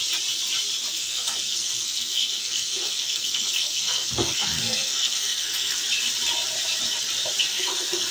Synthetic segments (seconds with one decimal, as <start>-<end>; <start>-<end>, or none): 0.9-5.8; 7.5-8.1

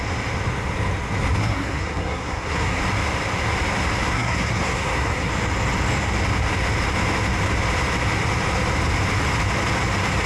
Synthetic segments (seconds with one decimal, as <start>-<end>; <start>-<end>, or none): 1.4-2.8; 4.1-5.3

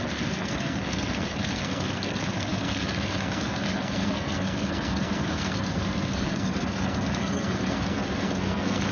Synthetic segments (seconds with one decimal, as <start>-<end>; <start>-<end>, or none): 0.0-8.9